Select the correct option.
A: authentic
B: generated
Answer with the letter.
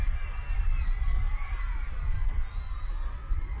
A